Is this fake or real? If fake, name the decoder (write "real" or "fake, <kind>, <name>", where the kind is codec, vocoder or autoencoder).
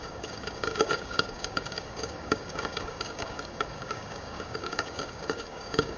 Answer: fake, codec, DAC